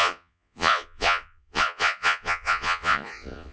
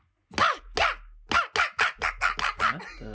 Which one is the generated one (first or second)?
first